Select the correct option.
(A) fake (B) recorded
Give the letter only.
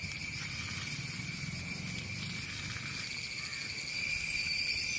B